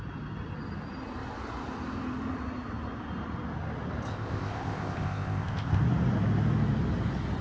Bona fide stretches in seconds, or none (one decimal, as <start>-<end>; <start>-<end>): 0.0-4.1; 5.8-7.4